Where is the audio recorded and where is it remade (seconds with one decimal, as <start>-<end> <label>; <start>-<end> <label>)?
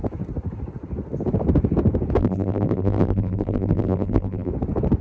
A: 0.0-2.2 recorded; 2.2-4.5 remade; 4.5-5.0 recorded